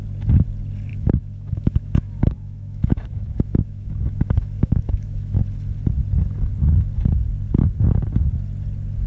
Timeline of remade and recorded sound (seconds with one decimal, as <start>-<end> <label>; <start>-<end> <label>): 0.0-0.9 recorded; 0.9-5.4 remade; 5.4-9.1 recorded